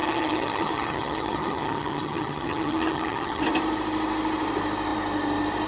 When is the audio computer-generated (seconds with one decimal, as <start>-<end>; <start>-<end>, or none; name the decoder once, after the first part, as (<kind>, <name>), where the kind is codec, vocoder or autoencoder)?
0.0-3.4 (vocoder, HiFi-GAN)